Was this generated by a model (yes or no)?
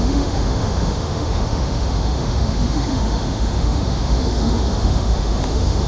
yes